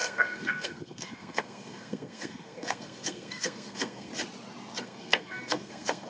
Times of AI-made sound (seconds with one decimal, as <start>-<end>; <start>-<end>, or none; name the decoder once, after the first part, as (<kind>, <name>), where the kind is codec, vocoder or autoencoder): 0.0-4.1 (codec, SNAC); 4.8-6.1